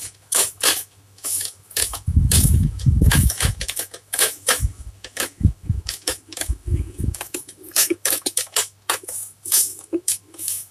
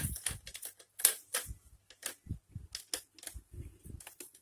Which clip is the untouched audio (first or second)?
second